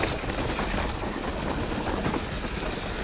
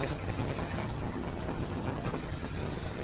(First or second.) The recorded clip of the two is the first